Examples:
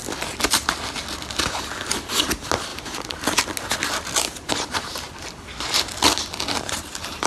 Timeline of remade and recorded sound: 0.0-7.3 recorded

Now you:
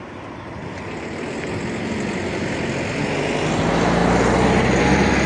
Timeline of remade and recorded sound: 0.0-5.3 recorded

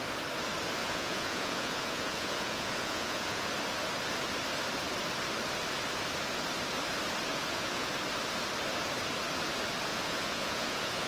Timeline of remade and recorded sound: 0.0-0.8 recorded; 0.8-3.5 remade; 3.5-7.3 recorded; 7.3-7.9 remade; 7.9-9.9 recorded; 9.9-11.1 remade